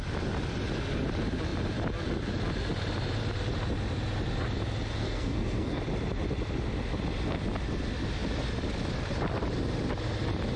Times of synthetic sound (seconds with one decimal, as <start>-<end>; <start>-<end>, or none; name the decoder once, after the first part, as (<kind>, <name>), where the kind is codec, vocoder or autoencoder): 5.0-5.8 (codec, SNAC)